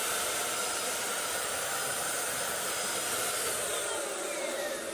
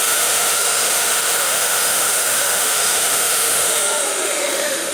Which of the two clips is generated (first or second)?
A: second